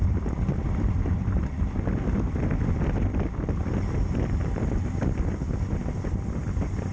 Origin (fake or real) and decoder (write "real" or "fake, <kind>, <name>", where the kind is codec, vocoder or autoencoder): fake, vocoder, BigVGAN v2